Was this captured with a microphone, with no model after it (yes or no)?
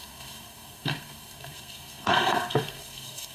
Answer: no